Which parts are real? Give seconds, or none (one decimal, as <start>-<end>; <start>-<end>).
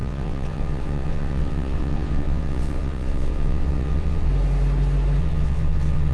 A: 4.3-5.2